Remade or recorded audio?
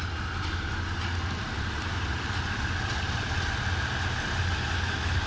recorded